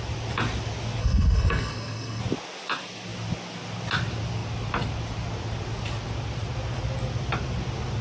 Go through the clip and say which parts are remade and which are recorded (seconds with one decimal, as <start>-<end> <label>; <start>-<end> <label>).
0.0-1.0 recorded; 1.0-2.2 remade; 2.2-8.0 recorded